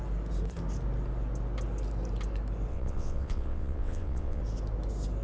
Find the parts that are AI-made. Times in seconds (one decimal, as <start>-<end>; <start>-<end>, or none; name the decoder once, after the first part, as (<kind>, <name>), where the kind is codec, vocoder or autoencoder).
2.7-4.4 (vocoder, WaveNeXt)